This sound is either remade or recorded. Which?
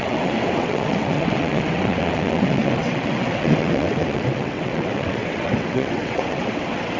remade